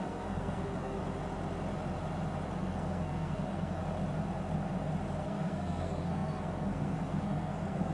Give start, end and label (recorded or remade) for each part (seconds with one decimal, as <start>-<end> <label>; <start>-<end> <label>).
0.0-1.0 remade; 1.0-2.6 recorded; 2.6-3.8 remade; 3.8-5.2 recorded; 5.2-7.9 remade